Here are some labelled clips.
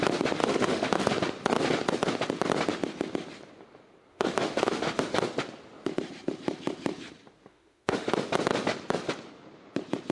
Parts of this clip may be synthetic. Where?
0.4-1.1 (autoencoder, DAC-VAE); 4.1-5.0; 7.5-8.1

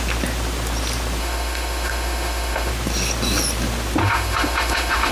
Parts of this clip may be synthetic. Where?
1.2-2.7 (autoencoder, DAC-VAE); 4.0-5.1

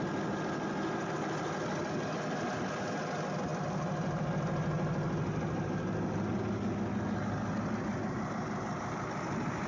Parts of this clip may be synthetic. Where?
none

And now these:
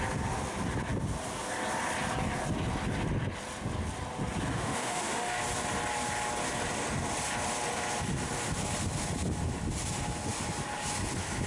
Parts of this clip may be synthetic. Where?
4.5-5.4 (autoencoder, DAC-VAE)

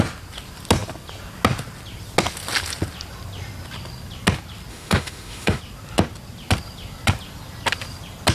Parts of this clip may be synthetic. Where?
4.7-5.6 (autoencoder, DAC-VAE)

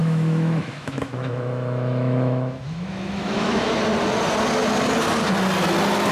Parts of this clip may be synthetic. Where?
0.0-3.7 (autoencoder, DAC-VAE)